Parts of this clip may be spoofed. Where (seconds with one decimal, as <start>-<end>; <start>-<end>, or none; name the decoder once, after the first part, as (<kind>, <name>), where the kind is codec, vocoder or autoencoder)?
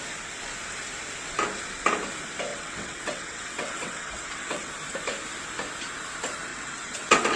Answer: 2.5-4.7 (vocoder, WaveNeXt); 6.5-7.4